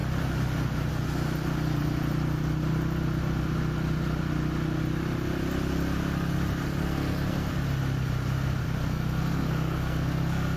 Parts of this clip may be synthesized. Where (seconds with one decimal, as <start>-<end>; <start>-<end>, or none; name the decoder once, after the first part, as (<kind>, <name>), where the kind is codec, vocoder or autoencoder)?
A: 6.8-7.5 (codec, SNAC); 8.6-10.6